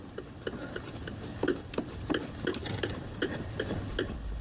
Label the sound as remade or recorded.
recorded